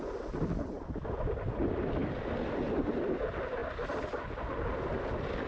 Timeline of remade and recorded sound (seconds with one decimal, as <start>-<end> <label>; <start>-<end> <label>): 0.0-3.6 recorded; 3.6-4.2 remade; 4.2-5.5 recorded